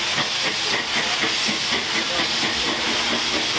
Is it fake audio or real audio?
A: real